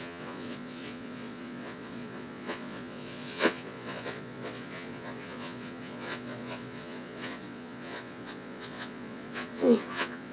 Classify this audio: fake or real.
fake